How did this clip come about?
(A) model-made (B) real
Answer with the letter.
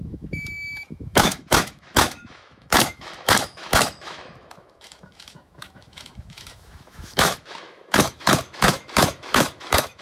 A